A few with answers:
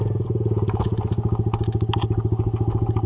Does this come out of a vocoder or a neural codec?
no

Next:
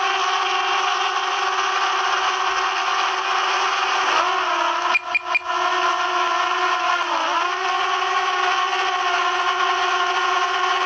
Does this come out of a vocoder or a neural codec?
no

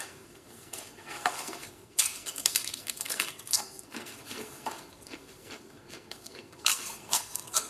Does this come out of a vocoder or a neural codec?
yes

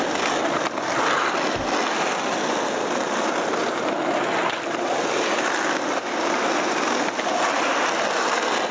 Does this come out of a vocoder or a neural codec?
no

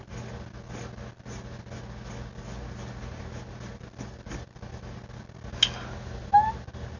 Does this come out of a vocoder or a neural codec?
no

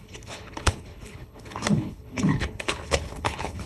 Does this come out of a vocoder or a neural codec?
yes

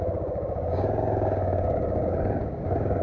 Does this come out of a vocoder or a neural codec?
yes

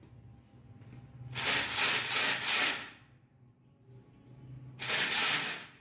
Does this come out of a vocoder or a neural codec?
no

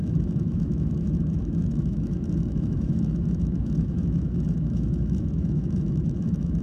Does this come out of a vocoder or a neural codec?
yes